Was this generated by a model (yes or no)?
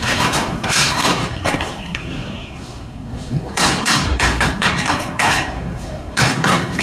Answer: yes